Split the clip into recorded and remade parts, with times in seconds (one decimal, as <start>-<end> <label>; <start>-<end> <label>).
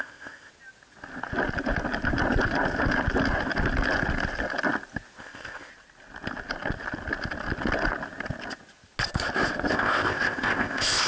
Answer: 0.0-0.5 remade; 0.5-5.2 recorded; 5.2-5.7 remade; 5.7-9.7 recorded; 9.7-11.1 remade